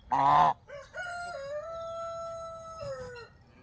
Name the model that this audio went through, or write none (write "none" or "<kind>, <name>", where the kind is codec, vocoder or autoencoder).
none